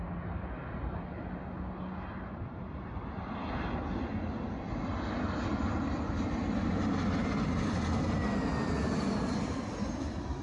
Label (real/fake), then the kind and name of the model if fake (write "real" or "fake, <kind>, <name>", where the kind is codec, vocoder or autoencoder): real